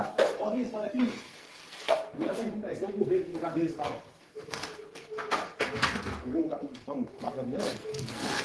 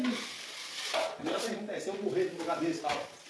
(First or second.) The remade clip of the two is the first